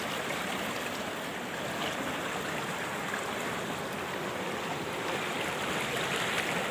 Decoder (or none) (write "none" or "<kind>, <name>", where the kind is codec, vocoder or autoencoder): none